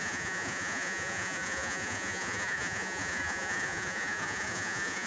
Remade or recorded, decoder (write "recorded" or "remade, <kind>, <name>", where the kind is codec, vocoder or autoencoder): remade, vocoder, Vocos